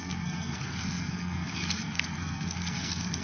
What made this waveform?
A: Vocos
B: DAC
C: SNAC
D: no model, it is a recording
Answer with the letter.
C